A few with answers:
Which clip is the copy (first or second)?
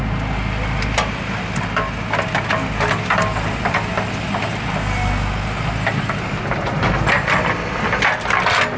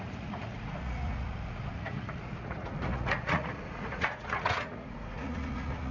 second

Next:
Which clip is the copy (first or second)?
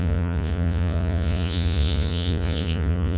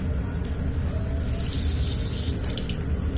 first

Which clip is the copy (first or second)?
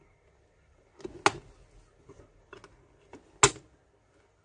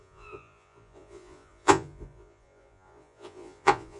second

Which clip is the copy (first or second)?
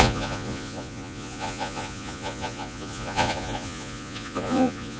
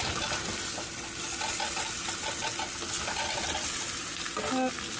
first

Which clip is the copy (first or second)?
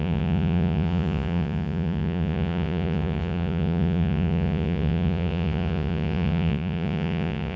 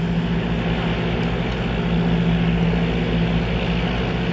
first